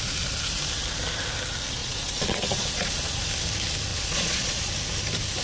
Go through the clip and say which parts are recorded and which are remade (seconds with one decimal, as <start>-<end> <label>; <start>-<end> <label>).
0.0-1.8 recorded; 1.8-3.2 remade; 3.2-3.9 recorded; 3.9-4.6 remade; 4.6-5.4 recorded

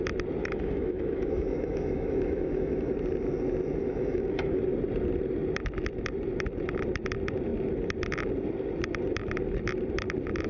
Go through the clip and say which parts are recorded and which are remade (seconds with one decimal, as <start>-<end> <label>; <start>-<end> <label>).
0.0-0.4 recorded; 0.4-2.9 remade; 2.9-3.8 recorded; 3.8-4.6 remade; 4.6-10.5 recorded

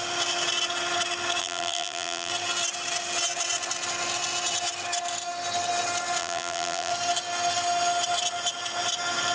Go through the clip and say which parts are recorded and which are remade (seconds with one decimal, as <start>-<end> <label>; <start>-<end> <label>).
0.0-1.4 recorded; 1.4-2.3 remade; 2.3-6.2 recorded; 6.2-6.9 remade; 6.9-9.3 recorded

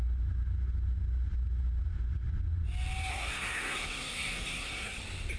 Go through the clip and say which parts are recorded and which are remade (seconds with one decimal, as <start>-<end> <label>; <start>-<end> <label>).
0.0-3.1 recorded; 3.1-5.0 remade; 5.0-5.4 recorded

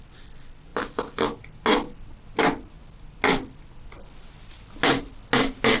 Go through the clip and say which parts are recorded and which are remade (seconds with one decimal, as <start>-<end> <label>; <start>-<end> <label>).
0.0-5.8 recorded

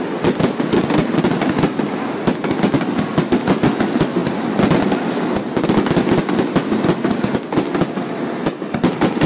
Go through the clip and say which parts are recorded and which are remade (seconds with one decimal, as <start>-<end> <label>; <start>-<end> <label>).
0.0-9.3 recorded

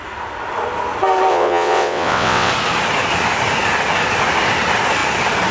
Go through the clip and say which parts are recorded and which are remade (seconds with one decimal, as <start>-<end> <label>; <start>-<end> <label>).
0.0-1.3 recorded; 1.3-2.5 remade; 2.5-5.5 recorded

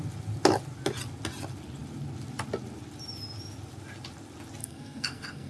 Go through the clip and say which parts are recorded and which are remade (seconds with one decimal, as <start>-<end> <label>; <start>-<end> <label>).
0.0-4.6 recorded; 4.6-5.5 remade